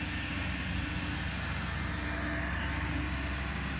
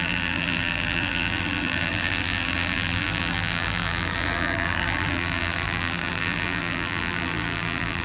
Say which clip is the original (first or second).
first